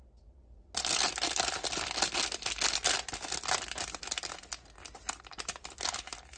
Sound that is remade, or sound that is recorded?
recorded